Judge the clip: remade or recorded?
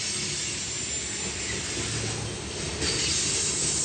recorded